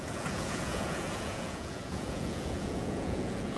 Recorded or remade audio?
remade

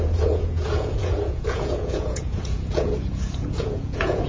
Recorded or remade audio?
remade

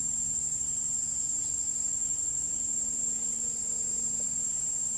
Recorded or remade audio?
recorded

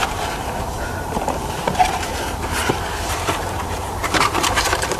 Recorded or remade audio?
remade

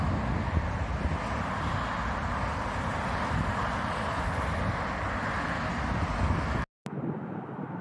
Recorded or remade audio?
recorded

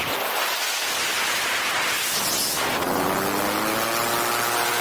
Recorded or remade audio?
recorded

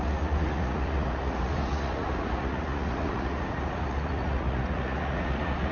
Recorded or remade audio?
remade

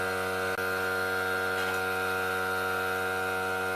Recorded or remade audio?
recorded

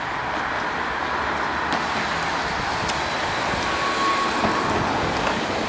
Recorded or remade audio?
recorded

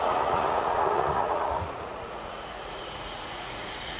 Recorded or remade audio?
remade